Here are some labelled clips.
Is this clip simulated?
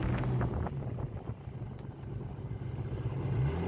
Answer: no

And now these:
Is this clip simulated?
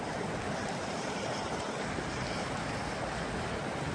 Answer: no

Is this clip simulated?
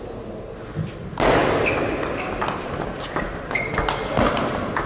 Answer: no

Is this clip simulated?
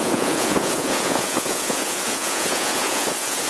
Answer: yes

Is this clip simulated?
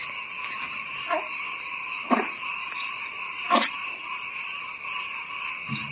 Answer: no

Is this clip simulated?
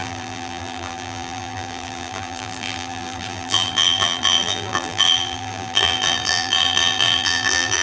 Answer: yes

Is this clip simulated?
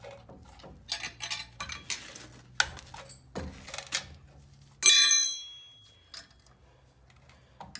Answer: no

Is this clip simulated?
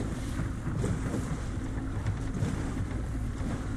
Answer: yes